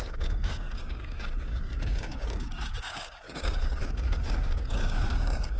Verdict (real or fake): fake